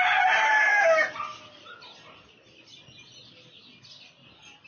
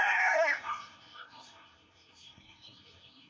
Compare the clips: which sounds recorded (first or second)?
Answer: first